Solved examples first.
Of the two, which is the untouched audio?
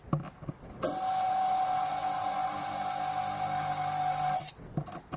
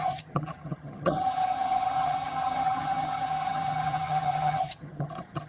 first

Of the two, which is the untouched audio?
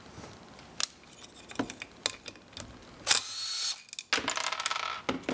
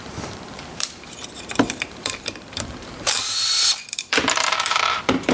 first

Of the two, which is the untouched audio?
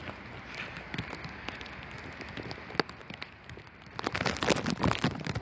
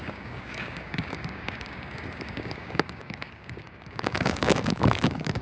first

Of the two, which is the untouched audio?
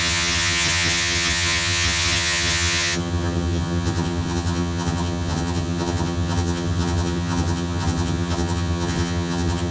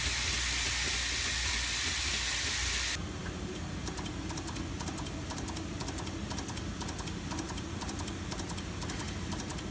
second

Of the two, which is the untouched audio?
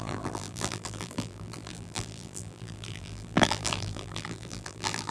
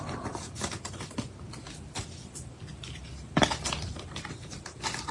second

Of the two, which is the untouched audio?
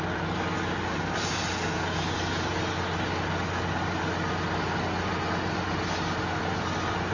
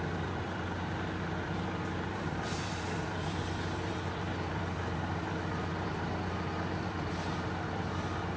first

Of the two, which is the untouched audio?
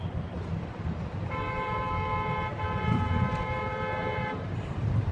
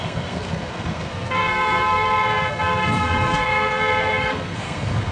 first